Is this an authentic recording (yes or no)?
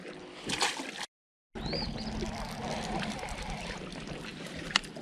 yes